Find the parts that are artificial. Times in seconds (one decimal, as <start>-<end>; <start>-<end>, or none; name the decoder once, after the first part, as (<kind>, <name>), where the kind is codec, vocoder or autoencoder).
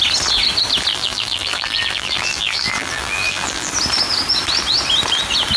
0.9-3.7 (vocoder, BigVGAN v2)